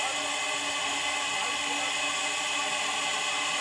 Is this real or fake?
real